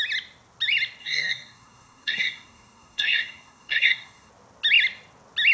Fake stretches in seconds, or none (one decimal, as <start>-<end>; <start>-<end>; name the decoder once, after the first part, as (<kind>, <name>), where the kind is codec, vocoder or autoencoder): 1.0-4.3 (codec, SNAC)